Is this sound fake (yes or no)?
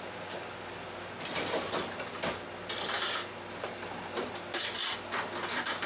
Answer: no